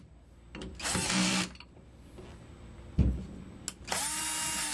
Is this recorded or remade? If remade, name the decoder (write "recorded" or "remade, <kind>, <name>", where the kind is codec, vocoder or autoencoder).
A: recorded